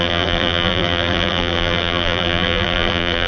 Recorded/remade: remade